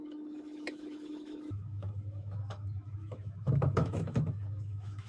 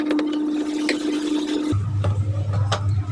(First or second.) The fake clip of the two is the first